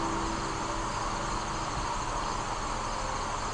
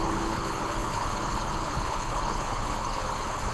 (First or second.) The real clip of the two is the first